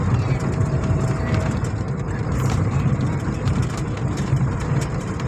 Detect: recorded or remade remade